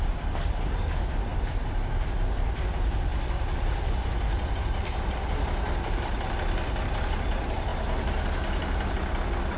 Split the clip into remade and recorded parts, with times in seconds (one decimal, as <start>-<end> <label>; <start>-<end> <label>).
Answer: 0.0-9.6 remade